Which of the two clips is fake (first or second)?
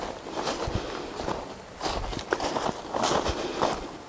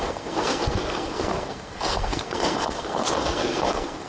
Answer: second